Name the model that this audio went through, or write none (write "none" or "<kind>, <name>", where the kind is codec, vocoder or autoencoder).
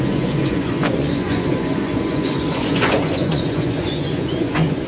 vocoder, Vocos